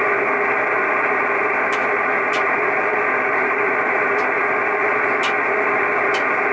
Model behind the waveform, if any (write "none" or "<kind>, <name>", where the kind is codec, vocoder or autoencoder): none